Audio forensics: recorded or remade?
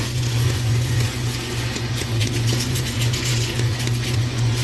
remade